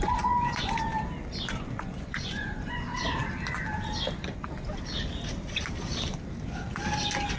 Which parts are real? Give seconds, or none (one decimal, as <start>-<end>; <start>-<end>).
0.9-1.6; 2.9-7.4

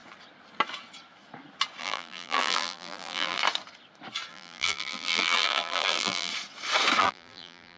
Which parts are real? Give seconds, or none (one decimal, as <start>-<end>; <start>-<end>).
0.0-1.8; 3.4-4.3; 6.3-7.0

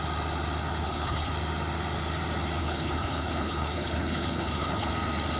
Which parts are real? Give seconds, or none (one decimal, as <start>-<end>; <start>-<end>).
0.0-0.8; 1.3-2.6; 4.9-5.4

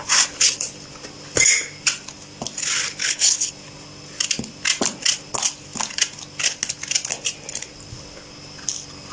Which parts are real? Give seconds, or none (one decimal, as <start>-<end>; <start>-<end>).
0.0-3.0; 3.5-9.1

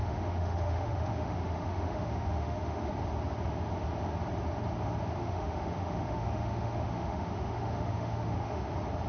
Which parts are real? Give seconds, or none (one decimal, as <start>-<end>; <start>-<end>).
2.9-5.2; 8.7-9.1

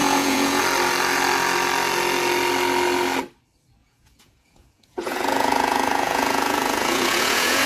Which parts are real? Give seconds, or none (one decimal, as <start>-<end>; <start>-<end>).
0.6-3.8

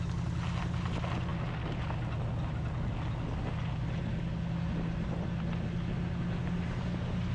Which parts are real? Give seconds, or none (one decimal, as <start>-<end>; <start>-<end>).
0.0-7.3